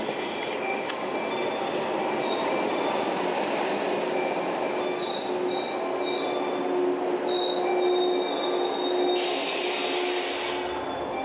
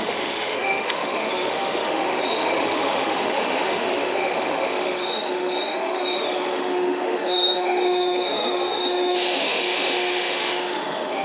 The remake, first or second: second